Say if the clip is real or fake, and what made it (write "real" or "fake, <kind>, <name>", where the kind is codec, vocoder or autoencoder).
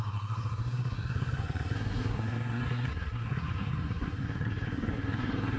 fake, codec, SNAC